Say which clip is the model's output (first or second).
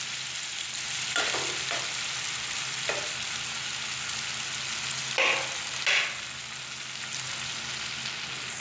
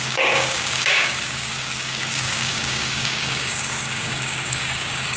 second